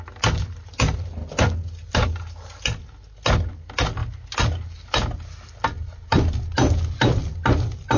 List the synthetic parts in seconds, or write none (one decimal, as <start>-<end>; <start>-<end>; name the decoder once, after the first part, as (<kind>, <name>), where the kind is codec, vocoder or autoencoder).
none